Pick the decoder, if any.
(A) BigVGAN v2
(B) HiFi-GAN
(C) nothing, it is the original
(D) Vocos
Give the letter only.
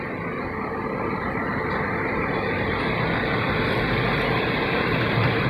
A